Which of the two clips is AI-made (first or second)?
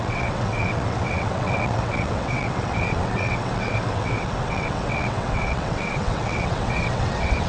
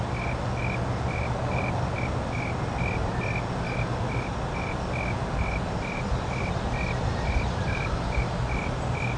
first